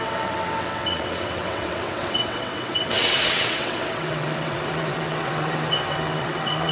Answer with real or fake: fake